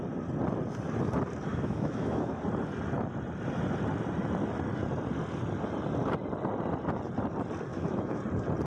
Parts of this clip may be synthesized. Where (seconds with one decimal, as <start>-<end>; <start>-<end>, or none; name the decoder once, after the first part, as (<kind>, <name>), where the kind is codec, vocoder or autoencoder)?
1.5-2.4 (autoencoder, DAC-VAE); 7.7-8.2